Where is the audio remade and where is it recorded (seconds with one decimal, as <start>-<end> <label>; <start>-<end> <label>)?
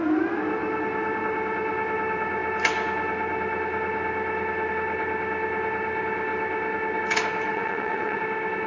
0.0-7.5 recorded; 7.5-8.2 remade; 8.2-8.7 recorded